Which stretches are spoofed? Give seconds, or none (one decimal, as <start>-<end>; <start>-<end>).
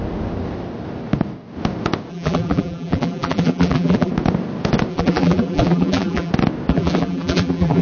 2.1-4.1; 4.9-6.3; 6.7-7.8